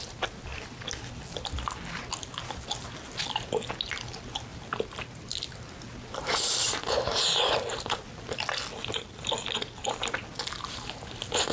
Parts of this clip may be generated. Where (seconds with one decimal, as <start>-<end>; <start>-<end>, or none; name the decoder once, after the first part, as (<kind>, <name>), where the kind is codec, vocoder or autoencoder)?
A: none